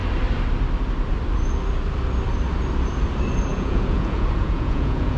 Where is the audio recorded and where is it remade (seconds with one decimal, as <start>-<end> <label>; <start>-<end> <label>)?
0.0-3.5 recorded; 3.5-5.2 remade